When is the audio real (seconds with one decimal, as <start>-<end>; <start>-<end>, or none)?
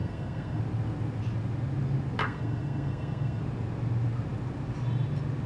0.6-2.2; 3.4-5.5